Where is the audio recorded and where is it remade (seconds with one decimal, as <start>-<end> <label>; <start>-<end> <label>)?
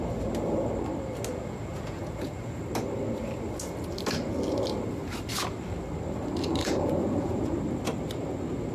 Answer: 0.0-1.3 recorded; 1.3-2.6 remade; 2.6-6.6 recorded; 6.6-7.6 remade; 7.6-8.7 recorded